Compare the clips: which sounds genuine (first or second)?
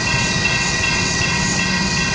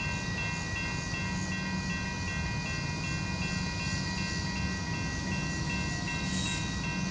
second